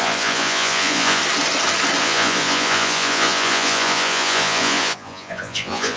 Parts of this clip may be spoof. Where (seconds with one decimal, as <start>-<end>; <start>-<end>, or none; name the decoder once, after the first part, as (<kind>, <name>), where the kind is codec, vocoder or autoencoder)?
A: 0.0-1.2 (vocoder, Vocos); 2.0-6.0